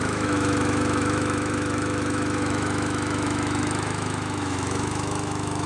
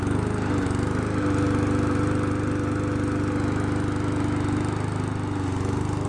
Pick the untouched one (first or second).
second